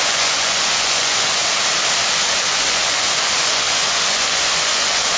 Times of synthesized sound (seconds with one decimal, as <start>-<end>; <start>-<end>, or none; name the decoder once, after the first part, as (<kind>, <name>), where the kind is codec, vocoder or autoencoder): 0.0-1.4 (vocoder, Vocos); 2.3-5.2